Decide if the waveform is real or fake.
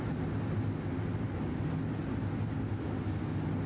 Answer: real